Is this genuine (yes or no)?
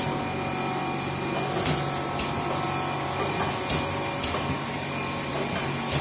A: yes